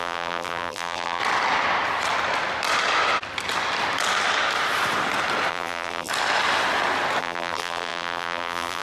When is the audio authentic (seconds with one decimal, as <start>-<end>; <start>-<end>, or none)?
1.2-5.5; 6.1-7.2